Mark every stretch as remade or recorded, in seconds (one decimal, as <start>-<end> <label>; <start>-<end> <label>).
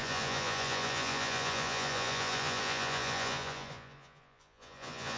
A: 0.0-5.2 remade